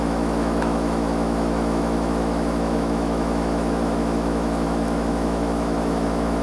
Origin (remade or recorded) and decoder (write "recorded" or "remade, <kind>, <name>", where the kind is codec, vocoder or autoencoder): remade, autoencoder, DAC-VAE